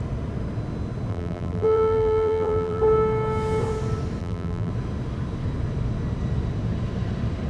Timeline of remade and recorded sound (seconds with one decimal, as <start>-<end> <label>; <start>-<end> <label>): 0.0-1.1 recorded; 1.1-2.8 remade; 2.8-4.2 recorded; 4.2-4.7 remade; 4.7-7.5 recorded